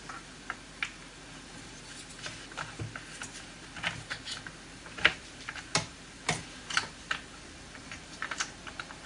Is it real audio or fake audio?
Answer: real